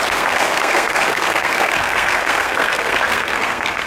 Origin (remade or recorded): remade